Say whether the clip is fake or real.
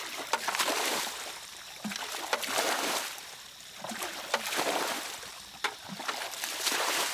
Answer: fake